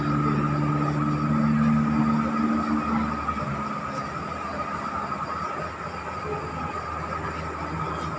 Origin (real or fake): real